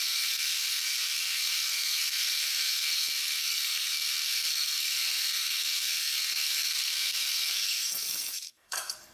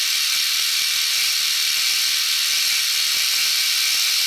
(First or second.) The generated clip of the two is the first